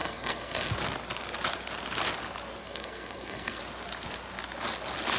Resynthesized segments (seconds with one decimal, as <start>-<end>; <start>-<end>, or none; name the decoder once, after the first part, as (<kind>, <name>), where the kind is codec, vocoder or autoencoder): 0.0-0.7 (codec, SNAC); 2.6-3.6